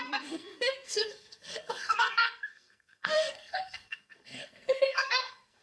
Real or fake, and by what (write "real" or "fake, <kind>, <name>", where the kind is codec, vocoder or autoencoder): fake, codec, SNAC